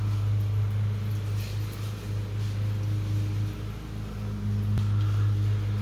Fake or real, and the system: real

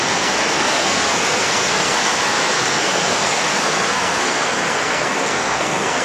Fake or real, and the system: fake, codec, SNAC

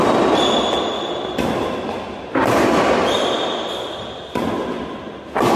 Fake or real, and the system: real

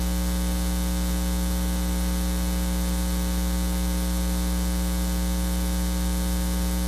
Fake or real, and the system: real